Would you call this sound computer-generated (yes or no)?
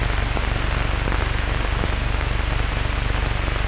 no